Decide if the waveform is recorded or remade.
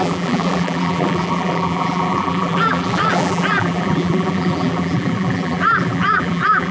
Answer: remade